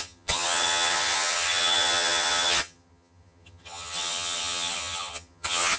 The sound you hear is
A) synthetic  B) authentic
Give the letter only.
A